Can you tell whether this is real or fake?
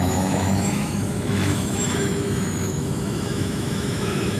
fake